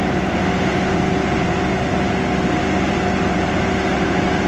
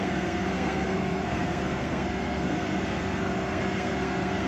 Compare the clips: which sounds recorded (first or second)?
first